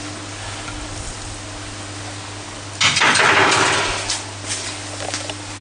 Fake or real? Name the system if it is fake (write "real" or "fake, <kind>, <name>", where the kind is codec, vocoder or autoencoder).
real